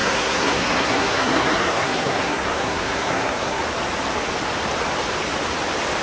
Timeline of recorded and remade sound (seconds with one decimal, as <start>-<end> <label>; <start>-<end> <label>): 0.0-3.6 remade; 3.6-6.0 recorded